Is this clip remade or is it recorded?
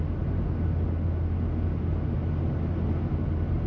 recorded